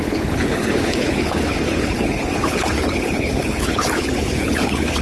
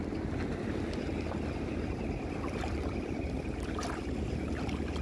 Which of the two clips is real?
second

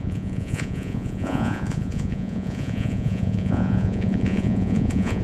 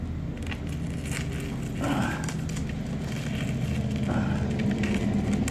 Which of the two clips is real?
second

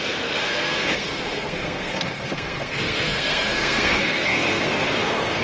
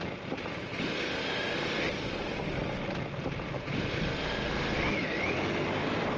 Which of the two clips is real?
second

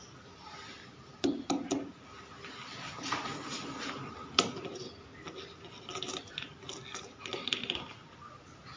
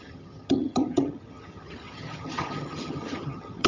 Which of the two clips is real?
first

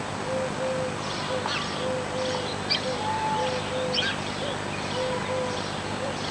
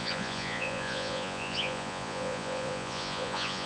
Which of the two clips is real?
first